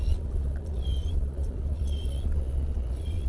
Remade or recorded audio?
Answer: remade